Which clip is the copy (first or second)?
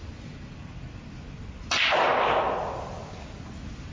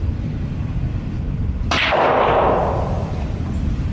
second